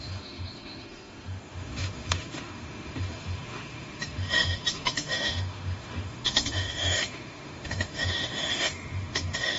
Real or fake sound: fake